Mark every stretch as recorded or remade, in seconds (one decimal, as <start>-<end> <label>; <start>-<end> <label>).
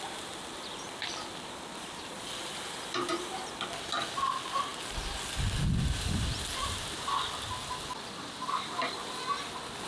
0.0-9.9 recorded